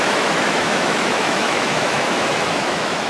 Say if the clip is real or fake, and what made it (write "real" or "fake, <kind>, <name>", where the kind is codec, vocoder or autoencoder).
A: fake, autoencoder, DAC-VAE